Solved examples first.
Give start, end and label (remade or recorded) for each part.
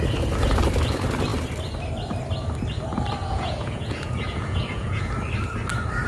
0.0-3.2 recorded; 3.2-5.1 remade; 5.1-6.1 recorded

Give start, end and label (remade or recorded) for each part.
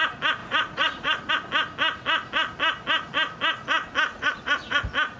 0.0-0.4 recorded; 0.4-1.3 remade; 1.3-4.1 recorded; 4.1-4.8 remade; 4.8-5.2 recorded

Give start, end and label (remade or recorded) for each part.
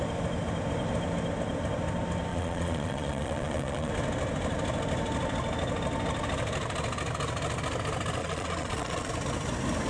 0.0-2.3 recorded; 2.3-3.9 remade; 3.9-8.2 recorded; 8.2-9.1 remade; 9.1-9.9 recorded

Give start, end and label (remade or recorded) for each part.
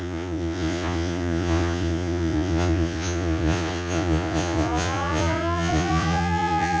0.0-6.8 remade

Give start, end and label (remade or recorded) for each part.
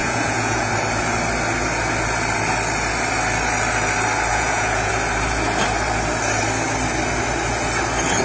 0.0-0.7 remade; 0.7-4.3 recorded; 4.3-4.9 remade; 4.9-8.2 recorded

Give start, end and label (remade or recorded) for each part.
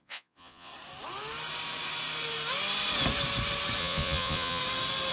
0.0-0.7 remade; 0.7-3.8 recorded; 3.8-4.6 remade; 4.6-5.1 recorded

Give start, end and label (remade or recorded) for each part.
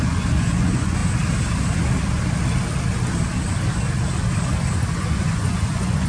0.0-1.0 remade; 1.0-4.7 recorded; 4.7-6.1 remade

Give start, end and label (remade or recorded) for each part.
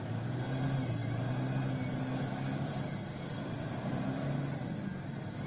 0.0-5.5 recorded